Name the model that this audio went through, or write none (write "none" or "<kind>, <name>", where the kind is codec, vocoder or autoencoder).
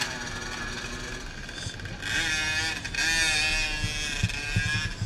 none